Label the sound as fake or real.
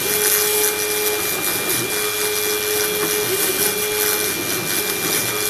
real